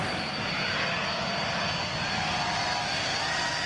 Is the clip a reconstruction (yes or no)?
no